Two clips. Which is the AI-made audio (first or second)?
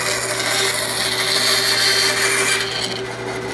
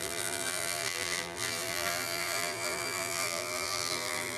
second